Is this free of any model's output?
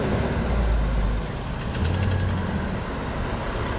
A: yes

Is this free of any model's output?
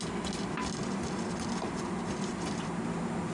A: yes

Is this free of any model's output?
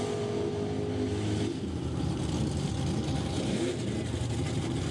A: yes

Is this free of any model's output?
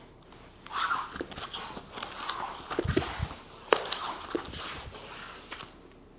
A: yes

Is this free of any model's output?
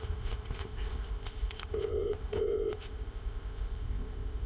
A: no